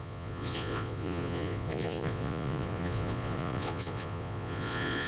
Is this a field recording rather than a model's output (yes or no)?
no